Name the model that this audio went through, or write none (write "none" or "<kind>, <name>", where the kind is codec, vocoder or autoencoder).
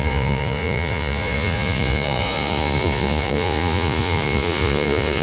vocoder, Vocos